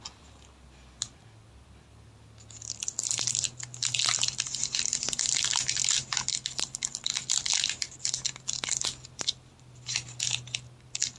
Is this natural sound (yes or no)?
yes